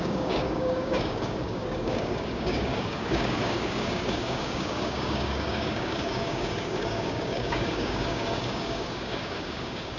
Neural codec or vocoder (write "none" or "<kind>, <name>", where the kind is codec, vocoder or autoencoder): codec, DAC